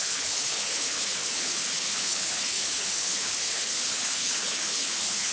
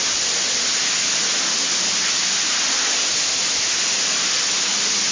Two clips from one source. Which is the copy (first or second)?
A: first